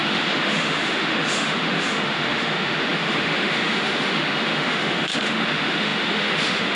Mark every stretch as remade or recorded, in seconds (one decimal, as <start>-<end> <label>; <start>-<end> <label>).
0.0-6.8 remade